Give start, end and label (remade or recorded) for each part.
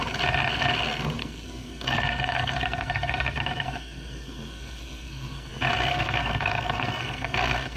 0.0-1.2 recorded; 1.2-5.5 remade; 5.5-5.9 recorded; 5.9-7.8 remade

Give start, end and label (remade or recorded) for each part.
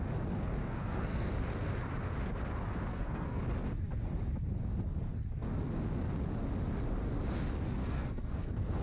0.0-0.6 recorded; 0.6-1.3 remade; 1.3-2.9 recorded; 2.9-3.4 remade; 3.4-7.8 recorded; 7.8-8.8 remade